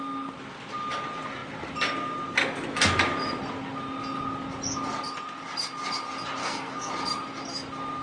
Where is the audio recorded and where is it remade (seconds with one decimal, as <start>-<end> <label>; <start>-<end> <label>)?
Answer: 0.0-6.4 recorded; 6.4-6.9 remade; 6.9-8.0 recorded